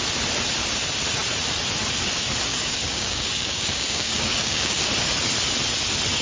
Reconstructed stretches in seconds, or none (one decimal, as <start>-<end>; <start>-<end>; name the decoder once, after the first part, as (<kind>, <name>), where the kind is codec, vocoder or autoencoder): 2.5-4.9 (codec, DAC)